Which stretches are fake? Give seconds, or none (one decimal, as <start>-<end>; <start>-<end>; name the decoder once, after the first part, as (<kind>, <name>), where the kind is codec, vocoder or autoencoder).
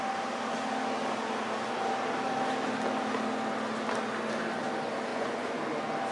5.1-5.6 (vocoder, Vocos)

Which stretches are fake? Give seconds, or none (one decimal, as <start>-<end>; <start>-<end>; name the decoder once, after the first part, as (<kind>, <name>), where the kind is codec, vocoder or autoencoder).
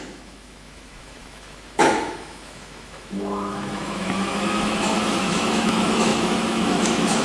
0.0-7.2 (autoencoder, DAC-VAE)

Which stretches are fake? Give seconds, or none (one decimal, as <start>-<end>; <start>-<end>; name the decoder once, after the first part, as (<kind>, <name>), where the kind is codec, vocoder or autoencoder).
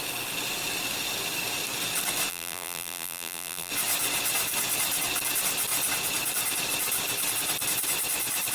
2.3-3.7 (vocoder, BigVGAN v2)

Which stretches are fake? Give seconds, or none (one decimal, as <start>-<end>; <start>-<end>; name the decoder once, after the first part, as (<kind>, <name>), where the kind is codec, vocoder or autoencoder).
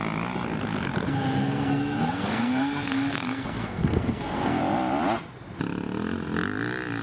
1.1-4.6 (codec, SNAC)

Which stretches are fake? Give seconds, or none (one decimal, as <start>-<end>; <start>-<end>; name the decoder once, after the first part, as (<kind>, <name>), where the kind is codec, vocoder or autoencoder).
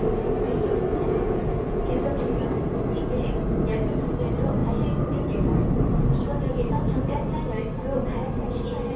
0.9-1.8 (vocoder, Vocos)